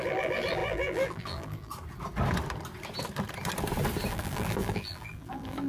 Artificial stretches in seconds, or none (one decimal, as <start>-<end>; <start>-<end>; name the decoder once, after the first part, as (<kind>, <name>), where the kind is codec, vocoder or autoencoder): 0.0-1.7 (vocoder, BigVGAN v2); 4.1-5.7